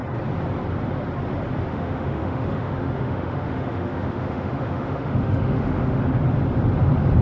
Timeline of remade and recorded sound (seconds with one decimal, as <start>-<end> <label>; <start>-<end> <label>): 0.0-1.7 recorded; 1.7-6.0 remade; 6.0-7.2 recorded

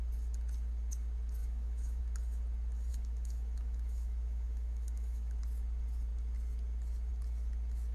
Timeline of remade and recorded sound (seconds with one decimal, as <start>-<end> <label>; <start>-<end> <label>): 0.0-1.4 recorded; 1.4-2.0 remade; 2.0-2.9 recorded; 2.9-5.4 remade; 5.4-7.9 recorded

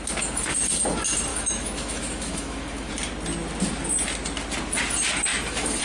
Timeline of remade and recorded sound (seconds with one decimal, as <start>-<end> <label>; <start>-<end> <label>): 0.0-1.3 recorded; 1.3-2.9 remade; 2.9-5.3 recorded; 5.3-5.8 remade

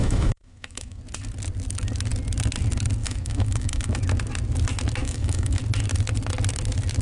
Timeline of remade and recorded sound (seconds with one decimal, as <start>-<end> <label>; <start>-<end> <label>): 0.0-1.0 remade; 1.0-3.0 recorded; 3.0-4.0 remade; 4.0-5.0 recorded; 5.0-5.6 remade; 5.6-7.0 recorded

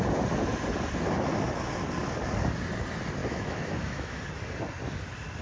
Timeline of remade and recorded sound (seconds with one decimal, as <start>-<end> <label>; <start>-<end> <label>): 0.0-3.2 recorded; 3.2-4.2 remade; 4.2-5.4 recorded

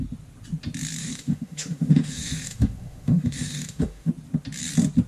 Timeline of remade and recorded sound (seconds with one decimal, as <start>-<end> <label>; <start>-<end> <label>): 0.0-1.0 recorded; 1.0-4.1 remade; 4.1-5.1 recorded

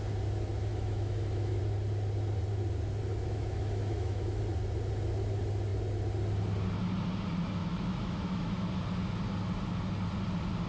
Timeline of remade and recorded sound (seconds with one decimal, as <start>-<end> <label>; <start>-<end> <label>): 0.0-0.7 recorded; 0.7-1.6 remade; 1.6-3.1 recorded; 3.1-4.4 remade; 4.4-7.6 recorded; 7.6-8.6 remade; 8.6-10.7 recorded